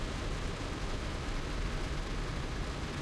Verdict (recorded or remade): recorded